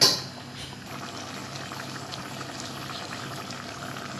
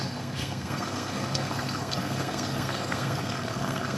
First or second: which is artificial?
second